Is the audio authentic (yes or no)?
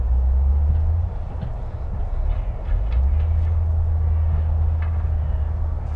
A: yes